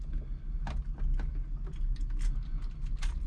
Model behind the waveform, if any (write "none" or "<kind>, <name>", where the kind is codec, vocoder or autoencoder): none